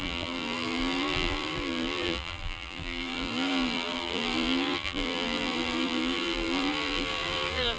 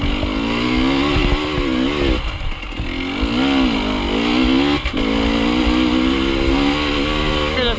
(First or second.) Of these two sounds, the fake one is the first